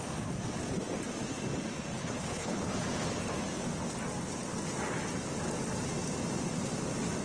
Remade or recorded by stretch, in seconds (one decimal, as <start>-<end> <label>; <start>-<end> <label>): 0.0-2.0 recorded; 2.0-2.7 remade; 2.7-7.2 recorded